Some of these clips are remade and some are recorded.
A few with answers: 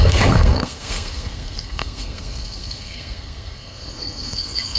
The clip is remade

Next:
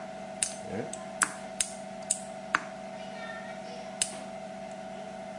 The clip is recorded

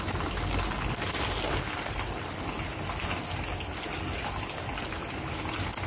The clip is recorded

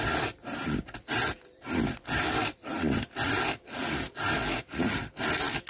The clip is recorded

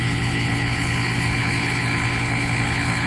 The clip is remade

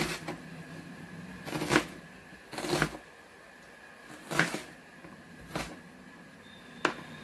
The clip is recorded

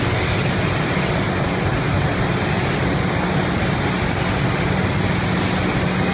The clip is recorded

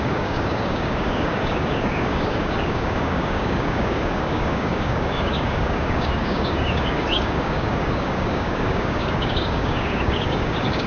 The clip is remade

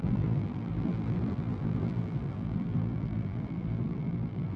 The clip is remade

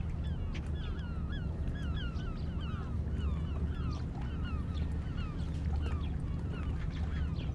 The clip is recorded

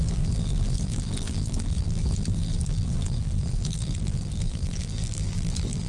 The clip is remade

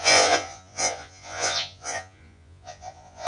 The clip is remade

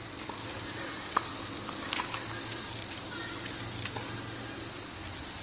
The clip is remade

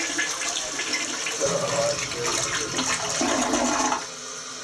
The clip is recorded